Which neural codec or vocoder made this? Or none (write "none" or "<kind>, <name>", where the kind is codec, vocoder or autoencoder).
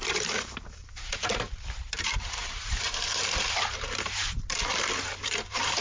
vocoder, BigVGAN v2